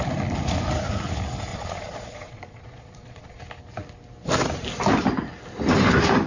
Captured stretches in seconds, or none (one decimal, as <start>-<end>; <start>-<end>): 0.0-1.5; 3.4-6.3